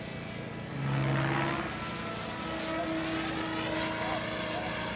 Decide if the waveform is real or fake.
real